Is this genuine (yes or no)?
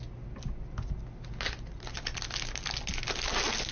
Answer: yes